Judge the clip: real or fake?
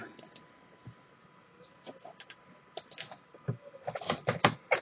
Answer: real